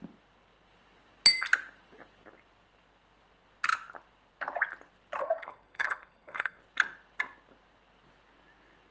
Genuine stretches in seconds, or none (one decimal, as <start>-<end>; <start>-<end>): 0.0-5.2; 6.6-8.9